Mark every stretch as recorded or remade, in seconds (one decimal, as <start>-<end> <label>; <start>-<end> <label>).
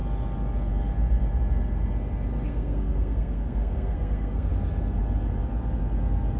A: 0.0-2.5 recorded; 2.5-4.5 remade; 4.5-6.4 recorded